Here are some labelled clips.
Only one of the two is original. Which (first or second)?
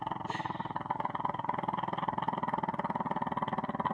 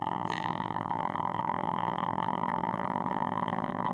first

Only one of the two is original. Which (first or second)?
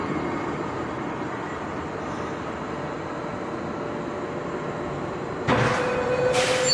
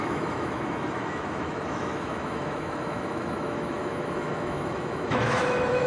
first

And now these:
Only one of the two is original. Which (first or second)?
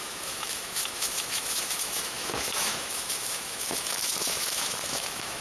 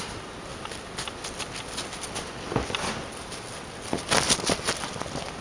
second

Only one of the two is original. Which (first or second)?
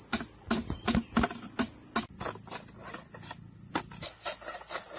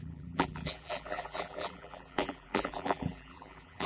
first